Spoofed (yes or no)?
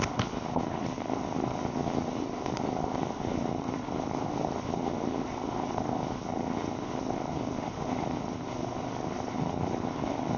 yes